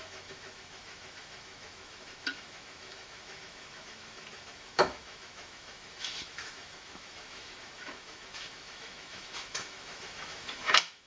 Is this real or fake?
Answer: fake